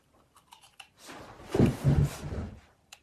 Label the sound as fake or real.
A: fake